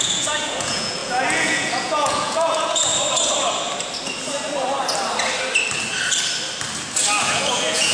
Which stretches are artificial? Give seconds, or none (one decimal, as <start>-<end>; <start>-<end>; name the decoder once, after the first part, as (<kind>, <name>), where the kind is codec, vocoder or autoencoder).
0.0-2.9 (vocoder, Vocos); 7.2-7.9